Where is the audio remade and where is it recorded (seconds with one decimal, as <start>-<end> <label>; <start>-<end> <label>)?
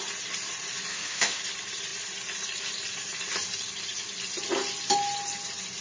0.0-0.9 recorded; 0.9-1.4 remade; 1.4-5.8 recorded